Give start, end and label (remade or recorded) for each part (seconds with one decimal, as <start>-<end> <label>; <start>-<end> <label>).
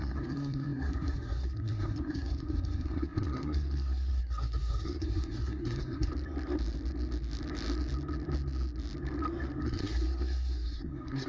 0.0-6.1 remade; 6.1-9.6 recorded; 9.6-11.3 remade